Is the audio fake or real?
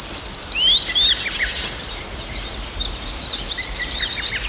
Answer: fake